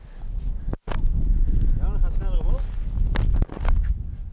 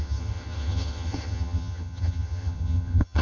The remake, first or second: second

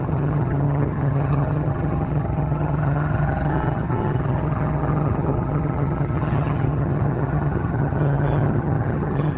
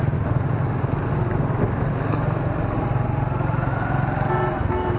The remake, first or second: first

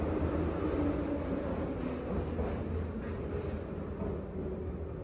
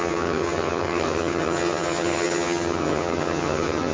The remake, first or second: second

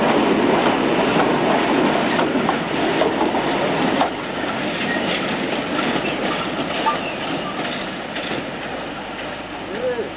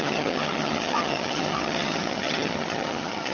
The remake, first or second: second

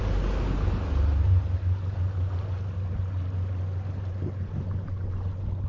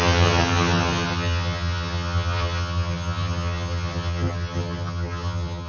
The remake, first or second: second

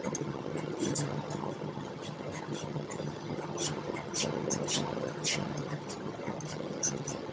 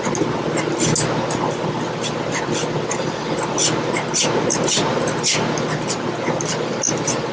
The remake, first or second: first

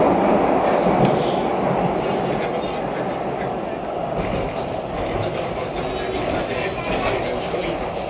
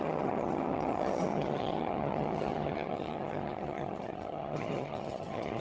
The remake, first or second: second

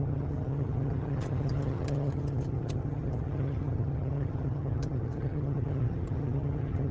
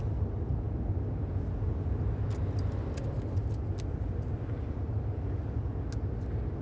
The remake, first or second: first